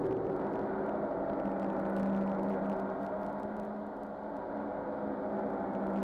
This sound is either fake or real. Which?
real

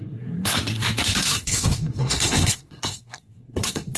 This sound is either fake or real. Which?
fake